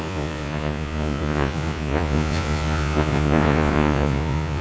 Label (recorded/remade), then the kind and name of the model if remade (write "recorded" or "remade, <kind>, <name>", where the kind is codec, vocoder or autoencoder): remade, vocoder, Vocos